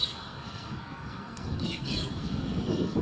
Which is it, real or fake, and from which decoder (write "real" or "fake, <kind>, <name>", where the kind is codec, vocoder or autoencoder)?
fake, codec, SNAC